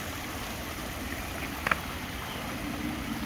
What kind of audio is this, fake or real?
real